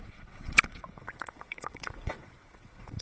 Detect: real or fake fake